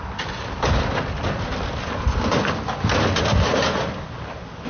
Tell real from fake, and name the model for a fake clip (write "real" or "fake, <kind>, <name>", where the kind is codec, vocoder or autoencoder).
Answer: real